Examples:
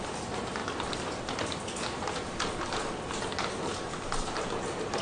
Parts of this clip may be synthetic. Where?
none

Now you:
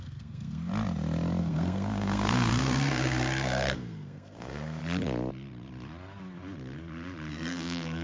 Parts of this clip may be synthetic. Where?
0.0-0.7 (codec, SNAC); 1.4-4.8; 7.3-8.0

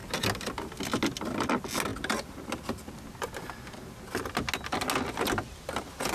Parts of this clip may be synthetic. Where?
none